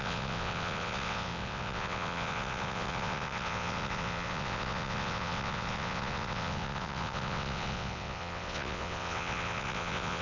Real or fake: fake